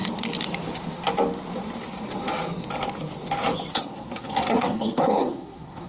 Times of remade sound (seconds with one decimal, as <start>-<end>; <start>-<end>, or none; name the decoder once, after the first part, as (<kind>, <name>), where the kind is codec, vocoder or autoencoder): 3.7-5.9 (codec, SNAC)